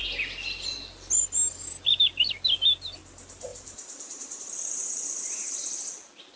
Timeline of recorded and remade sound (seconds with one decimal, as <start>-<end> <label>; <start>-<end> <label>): 0.0-3.5 recorded; 3.5-5.6 remade; 5.6-6.4 recorded